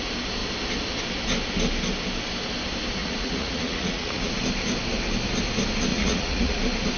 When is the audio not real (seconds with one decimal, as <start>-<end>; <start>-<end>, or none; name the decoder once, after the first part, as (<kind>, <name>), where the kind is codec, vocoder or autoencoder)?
3.0-4.3 (vocoder, Vocos); 5.9-6.6